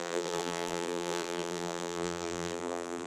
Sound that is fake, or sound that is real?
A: fake